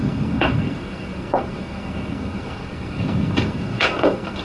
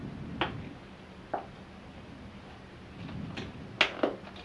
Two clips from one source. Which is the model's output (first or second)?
first